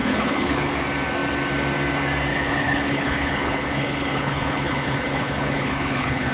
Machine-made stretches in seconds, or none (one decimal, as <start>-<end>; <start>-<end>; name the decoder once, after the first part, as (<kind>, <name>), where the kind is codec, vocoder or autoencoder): 0.0-0.7 (codec, HILCodec); 2.3-6.3